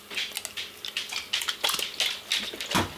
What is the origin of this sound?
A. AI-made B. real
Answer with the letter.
B